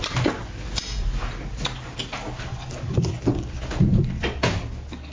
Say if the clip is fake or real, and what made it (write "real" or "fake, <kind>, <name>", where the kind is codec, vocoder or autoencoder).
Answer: real